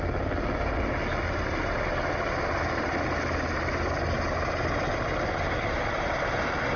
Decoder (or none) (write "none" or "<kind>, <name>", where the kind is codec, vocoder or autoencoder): none